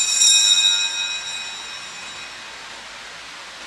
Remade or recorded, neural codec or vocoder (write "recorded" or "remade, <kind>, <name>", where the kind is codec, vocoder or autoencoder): recorded